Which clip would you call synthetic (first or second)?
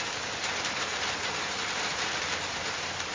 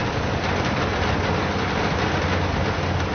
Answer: first